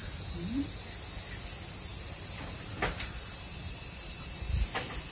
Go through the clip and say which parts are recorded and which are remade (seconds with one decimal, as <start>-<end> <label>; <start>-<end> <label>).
0.0-1.9 recorded; 1.9-5.1 remade